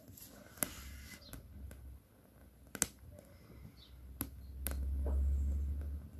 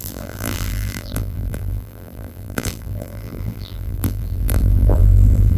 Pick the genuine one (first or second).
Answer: first